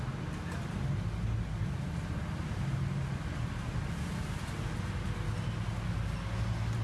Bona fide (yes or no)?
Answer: yes